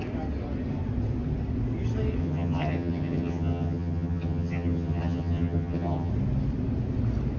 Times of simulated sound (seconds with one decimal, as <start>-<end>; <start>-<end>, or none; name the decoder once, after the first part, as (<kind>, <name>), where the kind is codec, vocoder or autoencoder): 2.2-6.1 (vocoder, HiFi-GAN)